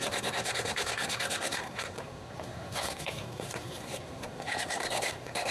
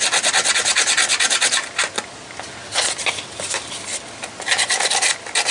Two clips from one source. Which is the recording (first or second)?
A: second